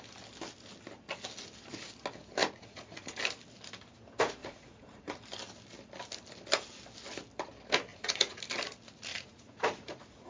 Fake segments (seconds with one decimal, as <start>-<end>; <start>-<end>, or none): 2.4-3.2; 4.4-5.2; 7.9-8.4; 9.1-10.3